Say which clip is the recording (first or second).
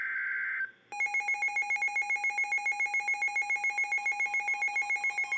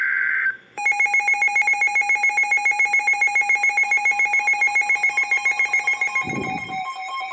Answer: first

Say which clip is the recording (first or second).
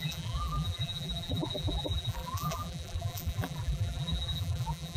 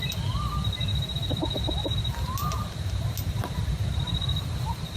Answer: second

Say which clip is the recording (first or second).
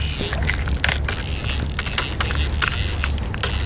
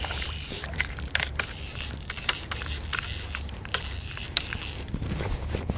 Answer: first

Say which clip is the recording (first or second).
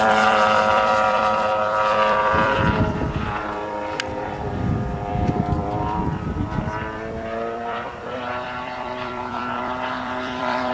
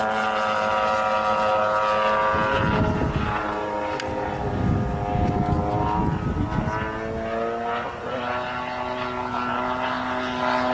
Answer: second